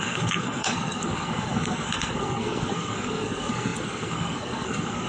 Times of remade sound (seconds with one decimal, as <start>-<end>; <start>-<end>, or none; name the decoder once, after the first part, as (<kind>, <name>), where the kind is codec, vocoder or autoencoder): 0.0-5.1 (codec, SNAC)